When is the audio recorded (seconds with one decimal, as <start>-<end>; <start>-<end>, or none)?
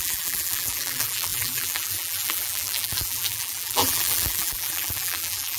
none